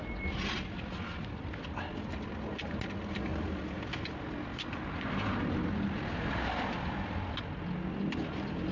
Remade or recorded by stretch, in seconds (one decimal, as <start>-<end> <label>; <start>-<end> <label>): 0.0-8.7 recorded